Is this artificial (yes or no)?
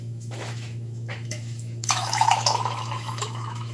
yes